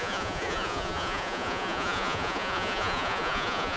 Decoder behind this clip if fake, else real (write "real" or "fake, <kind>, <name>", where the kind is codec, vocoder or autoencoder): fake, vocoder, Vocos